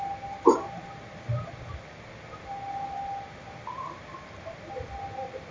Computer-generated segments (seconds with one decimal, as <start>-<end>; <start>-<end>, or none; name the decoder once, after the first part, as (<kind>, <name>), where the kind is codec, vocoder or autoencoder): none